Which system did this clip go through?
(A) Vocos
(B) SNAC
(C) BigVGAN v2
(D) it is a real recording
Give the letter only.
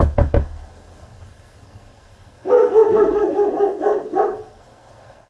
B